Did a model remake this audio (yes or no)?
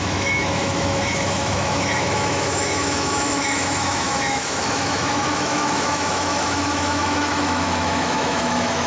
yes